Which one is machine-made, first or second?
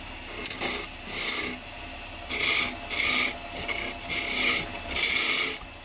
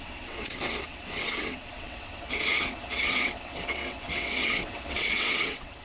second